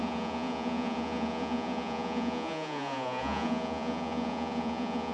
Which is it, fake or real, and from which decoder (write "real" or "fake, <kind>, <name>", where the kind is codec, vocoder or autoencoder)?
fake, vocoder, Vocos